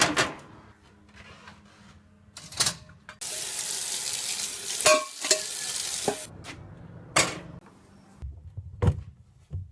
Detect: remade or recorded recorded